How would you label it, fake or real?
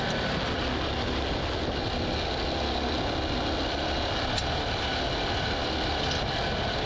real